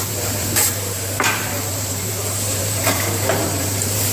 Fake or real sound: fake